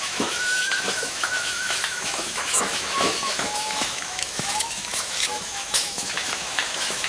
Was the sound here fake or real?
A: fake